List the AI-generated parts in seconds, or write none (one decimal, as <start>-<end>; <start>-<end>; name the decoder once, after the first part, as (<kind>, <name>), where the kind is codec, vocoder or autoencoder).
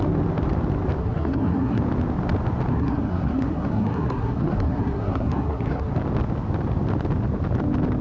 1.0-1.8 (codec, SNAC); 2.7-5.9